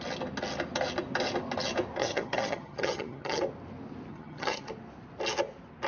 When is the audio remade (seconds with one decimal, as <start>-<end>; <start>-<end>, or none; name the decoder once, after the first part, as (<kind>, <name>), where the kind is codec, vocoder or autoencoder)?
2.0-3.4 (vocoder, HiFi-GAN); 4.1-4.7